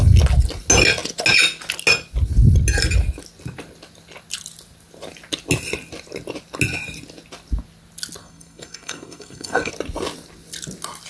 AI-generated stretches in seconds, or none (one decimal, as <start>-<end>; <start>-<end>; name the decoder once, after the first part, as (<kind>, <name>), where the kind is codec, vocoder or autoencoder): 8.2-9.7 (codec, SNAC)